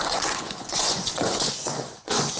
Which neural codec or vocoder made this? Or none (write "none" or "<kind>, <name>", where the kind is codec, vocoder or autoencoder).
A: vocoder, Vocos